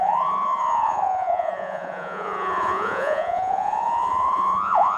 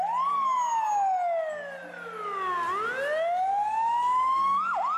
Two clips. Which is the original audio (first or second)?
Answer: second